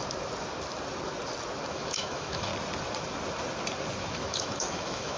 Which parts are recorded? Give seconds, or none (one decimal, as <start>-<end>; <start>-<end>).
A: 0.0-1.7; 2.5-4.0